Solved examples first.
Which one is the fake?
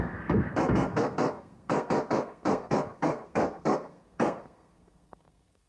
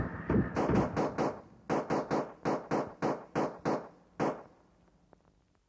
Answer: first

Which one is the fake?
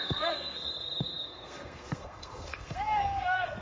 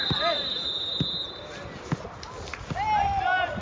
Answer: first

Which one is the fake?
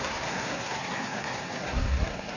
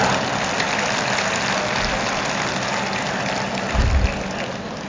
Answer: first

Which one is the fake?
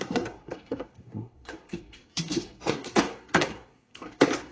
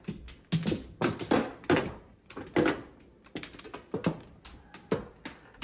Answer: first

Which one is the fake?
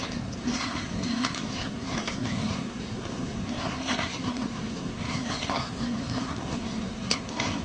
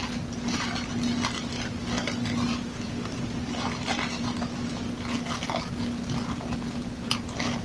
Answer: first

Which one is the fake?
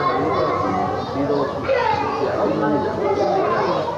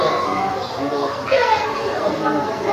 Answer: second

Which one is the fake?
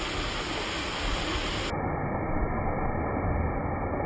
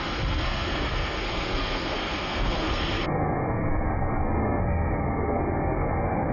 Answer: second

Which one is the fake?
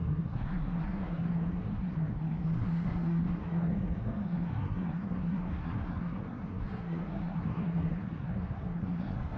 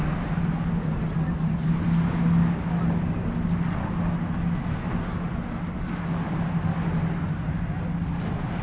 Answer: first